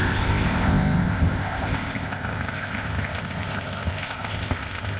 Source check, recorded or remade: remade